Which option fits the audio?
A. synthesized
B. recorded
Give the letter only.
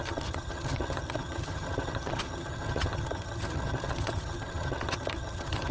A